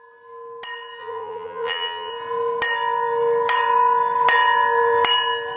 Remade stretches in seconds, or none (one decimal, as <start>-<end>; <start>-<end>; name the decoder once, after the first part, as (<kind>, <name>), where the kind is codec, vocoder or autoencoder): 1.0-2.1 (vocoder, BigVGAN v2)